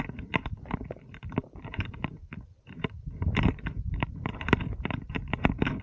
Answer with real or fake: fake